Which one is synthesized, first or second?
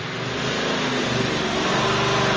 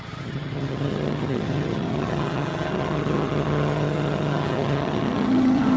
second